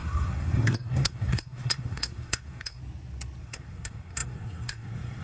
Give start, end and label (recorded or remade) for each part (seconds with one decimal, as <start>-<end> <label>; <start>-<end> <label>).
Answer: 0.0-2.8 remade; 2.8-3.4 recorded; 3.4-5.2 remade